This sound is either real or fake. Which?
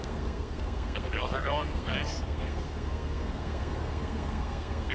fake